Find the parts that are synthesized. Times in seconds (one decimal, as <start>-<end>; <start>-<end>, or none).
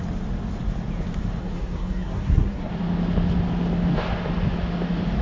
1.4-2.7